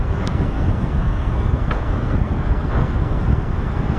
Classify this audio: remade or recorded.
remade